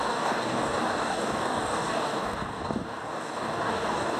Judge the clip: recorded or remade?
remade